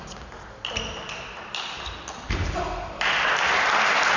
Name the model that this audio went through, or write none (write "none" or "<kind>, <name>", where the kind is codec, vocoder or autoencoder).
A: none